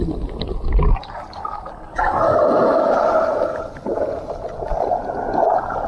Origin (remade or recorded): recorded